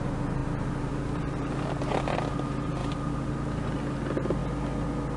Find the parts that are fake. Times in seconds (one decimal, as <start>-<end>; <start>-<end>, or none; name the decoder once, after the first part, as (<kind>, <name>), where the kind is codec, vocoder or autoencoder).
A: 2.8-3.3 (vocoder, BigVGAN v2)